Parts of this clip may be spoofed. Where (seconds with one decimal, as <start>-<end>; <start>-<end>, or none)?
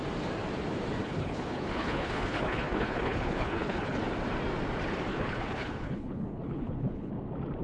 1.0-4.0; 5.1-7.1